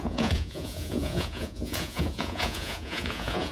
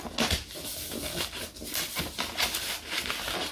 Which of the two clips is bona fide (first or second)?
second